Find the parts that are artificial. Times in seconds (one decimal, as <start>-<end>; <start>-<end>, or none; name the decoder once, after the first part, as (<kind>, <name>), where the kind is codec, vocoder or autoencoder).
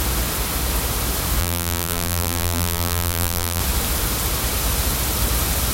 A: 1.4-3.6 (vocoder, BigVGAN v2)